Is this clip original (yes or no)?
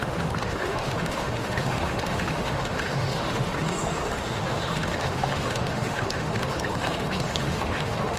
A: no